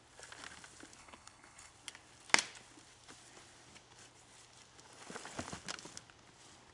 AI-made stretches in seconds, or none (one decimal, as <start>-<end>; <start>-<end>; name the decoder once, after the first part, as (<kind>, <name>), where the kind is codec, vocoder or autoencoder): 1.0-1.7 (codec, HILCodec)